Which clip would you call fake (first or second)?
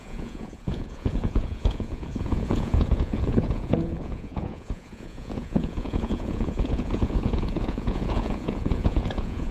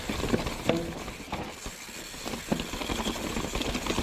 first